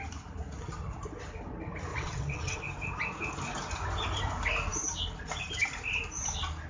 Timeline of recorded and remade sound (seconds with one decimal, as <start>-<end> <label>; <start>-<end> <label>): 0.0-1.9 recorded; 1.9-2.6 remade; 2.6-6.7 recorded